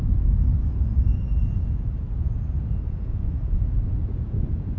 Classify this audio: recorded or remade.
remade